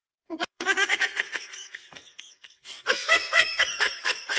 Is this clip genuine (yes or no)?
no